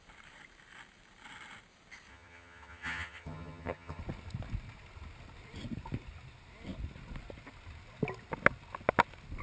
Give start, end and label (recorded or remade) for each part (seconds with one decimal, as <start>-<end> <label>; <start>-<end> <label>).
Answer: 0.0-2.1 recorded; 2.1-4.0 remade; 4.0-9.4 recorded